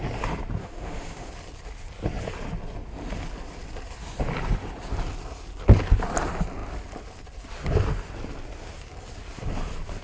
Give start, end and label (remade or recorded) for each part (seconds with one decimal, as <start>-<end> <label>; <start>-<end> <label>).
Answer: 0.0-0.6 recorded; 0.6-1.3 remade; 1.3-10.0 recorded